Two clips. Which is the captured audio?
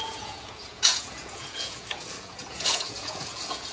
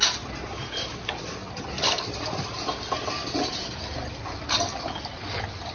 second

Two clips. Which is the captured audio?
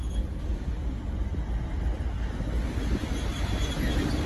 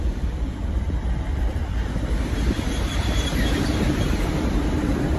first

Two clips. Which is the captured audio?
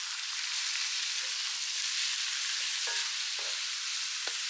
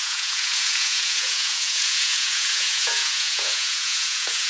first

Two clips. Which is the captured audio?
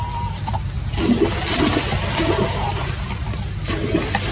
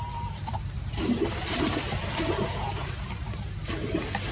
first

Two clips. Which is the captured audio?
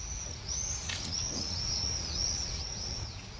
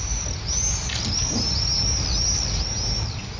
second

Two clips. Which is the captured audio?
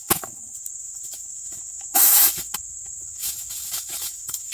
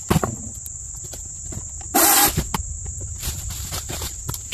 second